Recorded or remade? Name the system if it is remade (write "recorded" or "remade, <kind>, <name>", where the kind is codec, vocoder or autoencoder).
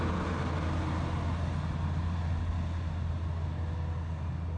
recorded